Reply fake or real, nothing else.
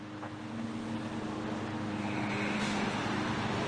real